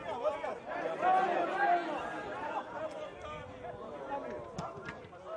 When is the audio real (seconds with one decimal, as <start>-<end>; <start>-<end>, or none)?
0.0-5.4